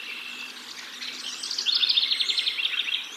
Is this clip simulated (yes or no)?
no